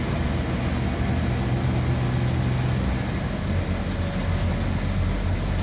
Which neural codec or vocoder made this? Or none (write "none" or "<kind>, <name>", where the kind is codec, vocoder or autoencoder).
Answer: none